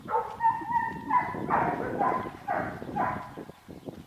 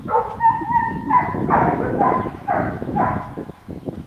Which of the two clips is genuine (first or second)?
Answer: first